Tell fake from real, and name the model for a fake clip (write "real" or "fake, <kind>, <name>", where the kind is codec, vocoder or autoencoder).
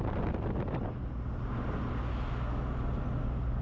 real